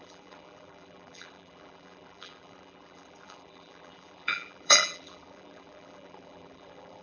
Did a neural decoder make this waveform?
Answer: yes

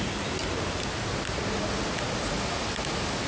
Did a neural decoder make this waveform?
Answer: no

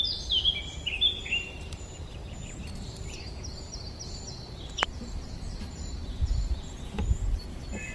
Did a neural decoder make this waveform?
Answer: yes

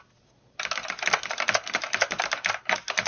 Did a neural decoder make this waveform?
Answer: no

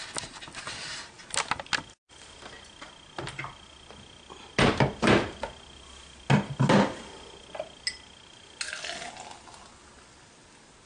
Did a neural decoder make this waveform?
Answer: no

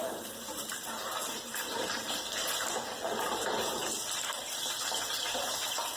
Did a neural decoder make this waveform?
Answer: yes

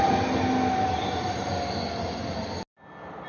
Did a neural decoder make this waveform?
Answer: no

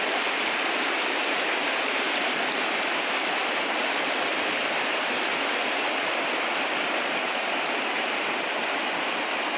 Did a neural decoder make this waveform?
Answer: no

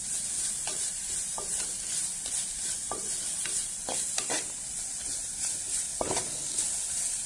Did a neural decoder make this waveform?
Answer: yes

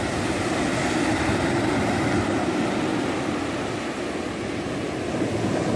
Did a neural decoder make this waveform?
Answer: no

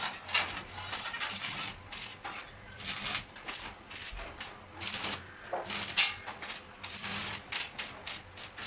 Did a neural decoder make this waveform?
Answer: no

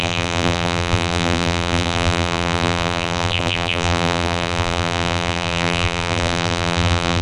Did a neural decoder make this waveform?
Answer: yes